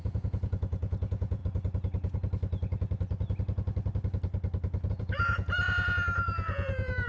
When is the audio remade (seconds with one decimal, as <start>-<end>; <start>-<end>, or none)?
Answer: 0.0-1.4; 4.9-7.1

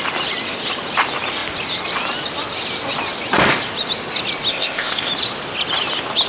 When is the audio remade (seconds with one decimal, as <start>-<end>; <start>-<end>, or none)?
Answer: 4.5-5.1

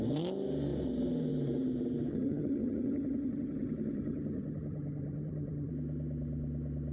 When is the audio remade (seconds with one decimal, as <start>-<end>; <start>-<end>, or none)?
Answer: 2.1-5.7

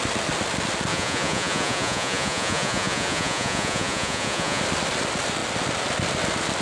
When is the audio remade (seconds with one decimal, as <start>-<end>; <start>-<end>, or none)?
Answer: 0.9-4.6